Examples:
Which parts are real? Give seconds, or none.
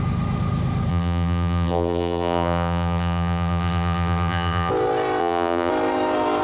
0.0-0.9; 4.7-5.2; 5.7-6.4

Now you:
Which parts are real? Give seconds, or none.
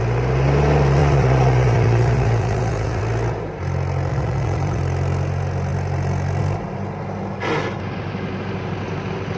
0.0-1.0; 3.0-4.1; 4.8-9.4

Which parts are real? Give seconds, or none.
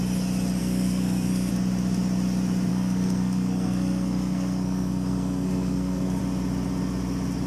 0.0-0.6; 1.5-2.7; 6.2-7.5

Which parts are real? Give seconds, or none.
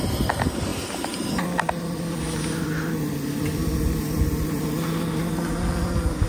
0.0-6.3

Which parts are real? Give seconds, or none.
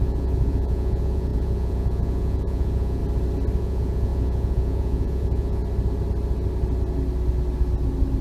3.0-3.6; 5.6-8.2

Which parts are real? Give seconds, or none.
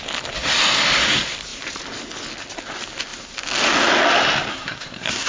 0.0-4.5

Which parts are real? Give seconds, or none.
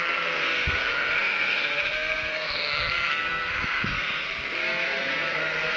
none